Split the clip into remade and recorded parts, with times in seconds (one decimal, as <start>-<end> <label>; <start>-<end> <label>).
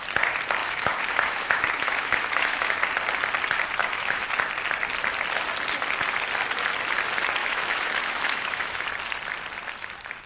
0.0-0.6 recorded; 0.6-2.7 remade; 2.7-3.8 recorded; 3.8-4.3 remade; 4.3-7.4 recorded; 7.4-8.9 remade; 8.9-10.3 recorded